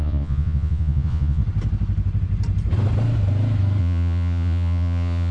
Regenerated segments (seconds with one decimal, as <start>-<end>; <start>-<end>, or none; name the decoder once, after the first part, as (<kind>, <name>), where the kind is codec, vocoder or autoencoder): 0.0-1.4 (vocoder, Vocos); 3.8-5.3